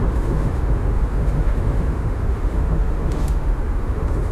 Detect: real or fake fake